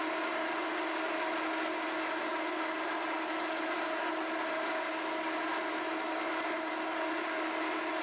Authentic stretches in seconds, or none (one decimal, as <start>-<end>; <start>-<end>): 0.0-8.0